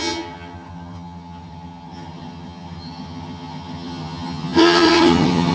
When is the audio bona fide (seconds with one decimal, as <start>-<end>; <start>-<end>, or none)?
none